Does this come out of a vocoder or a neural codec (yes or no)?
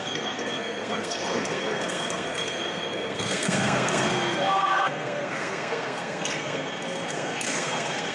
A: yes